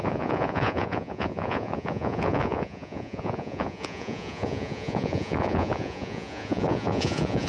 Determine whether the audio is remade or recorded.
remade